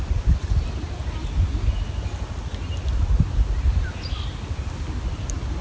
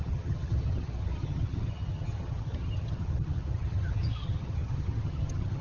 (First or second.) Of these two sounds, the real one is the first